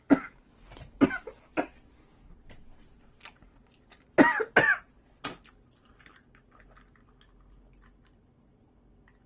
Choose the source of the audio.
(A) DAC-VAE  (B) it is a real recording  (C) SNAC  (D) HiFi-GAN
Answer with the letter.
B